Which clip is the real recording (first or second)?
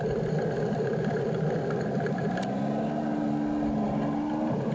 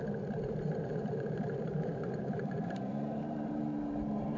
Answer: first